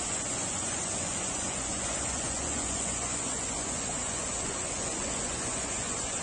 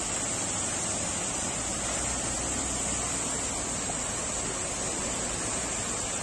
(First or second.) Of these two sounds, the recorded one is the second